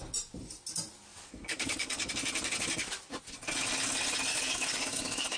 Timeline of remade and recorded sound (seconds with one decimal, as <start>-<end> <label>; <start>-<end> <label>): 0.0-1.1 recorded; 1.1-2.1 remade; 2.1-4.3 recorded; 4.3-5.4 remade